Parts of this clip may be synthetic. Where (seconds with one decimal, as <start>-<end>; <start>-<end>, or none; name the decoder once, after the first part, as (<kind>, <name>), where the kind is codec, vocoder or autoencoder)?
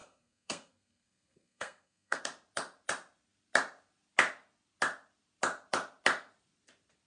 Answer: 0.0-2.2 (codec, SNAC)